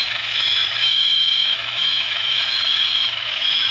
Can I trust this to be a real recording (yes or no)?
no